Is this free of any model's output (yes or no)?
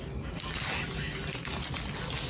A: yes